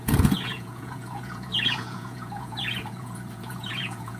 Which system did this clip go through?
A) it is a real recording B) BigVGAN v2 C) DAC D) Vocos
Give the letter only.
D